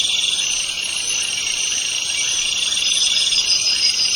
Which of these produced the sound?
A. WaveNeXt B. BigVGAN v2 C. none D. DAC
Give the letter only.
B